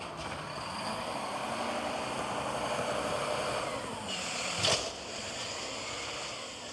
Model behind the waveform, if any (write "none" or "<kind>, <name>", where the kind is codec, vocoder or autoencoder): vocoder, BigVGAN v2